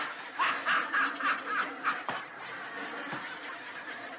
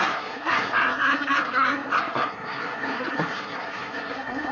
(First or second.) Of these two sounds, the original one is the first